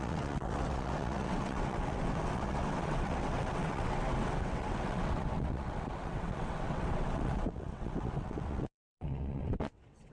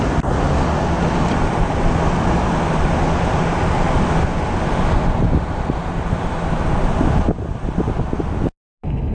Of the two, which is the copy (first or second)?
first